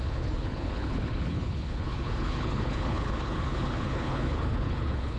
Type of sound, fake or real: fake